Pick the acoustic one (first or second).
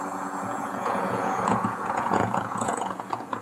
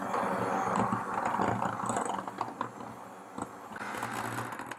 second